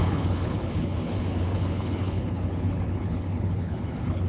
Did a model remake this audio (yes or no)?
yes